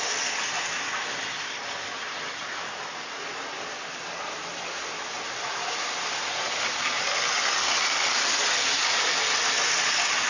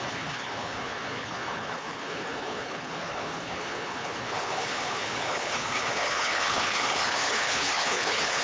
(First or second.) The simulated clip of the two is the second